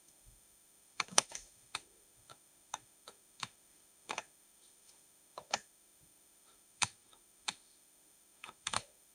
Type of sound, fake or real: fake